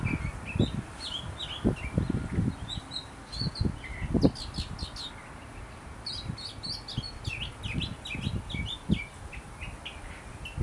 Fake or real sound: real